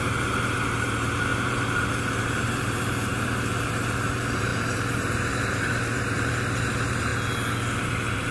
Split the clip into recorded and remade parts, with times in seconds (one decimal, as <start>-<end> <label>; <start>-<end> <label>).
0.0-7.1 remade; 7.1-7.8 recorded; 7.8-8.3 remade